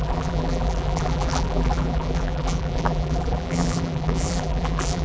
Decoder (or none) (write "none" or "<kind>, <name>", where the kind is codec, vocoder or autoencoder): vocoder, BigVGAN v2